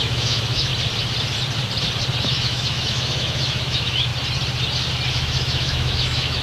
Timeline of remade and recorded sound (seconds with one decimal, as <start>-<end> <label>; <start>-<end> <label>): 0.0-0.7 remade; 0.7-2.2 recorded; 2.2-4.1 remade; 4.1-5.1 recorded; 5.1-6.4 remade